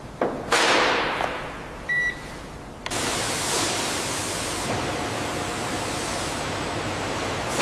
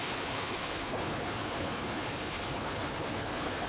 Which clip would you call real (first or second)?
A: first